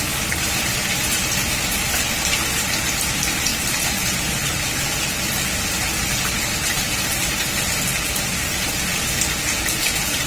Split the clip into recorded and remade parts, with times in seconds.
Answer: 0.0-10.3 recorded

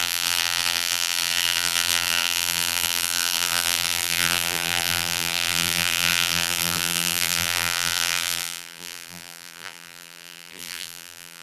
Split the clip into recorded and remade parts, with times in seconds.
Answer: 0.0-11.4 remade

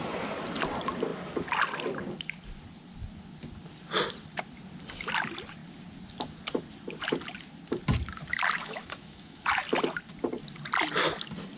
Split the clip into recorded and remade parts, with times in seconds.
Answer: 0.0-8.6 recorded; 8.6-9.5 remade; 9.5-11.6 recorded

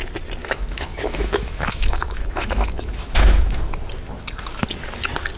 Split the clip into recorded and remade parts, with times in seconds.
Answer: 0.0-0.4 recorded; 0.4-3.6 remade; 3.6-5.4 recorded

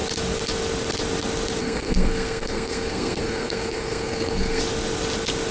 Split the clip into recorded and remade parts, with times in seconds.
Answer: 0.0-1.6 recorded; 1.6-4.6 remade; 4.6-5.5 recorded

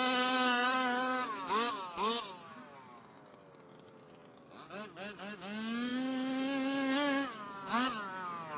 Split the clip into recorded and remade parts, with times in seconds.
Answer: 0.0-8.6 recorded

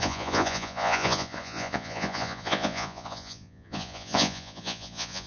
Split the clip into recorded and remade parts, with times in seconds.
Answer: 0.0-5.3 remade